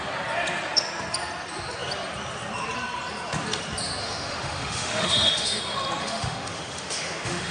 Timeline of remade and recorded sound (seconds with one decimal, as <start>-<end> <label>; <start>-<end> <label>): 0.0-4.0 recorded; 4.0-5.6 remade; 5.6-6.0 recorded; 6.0-7.5 remade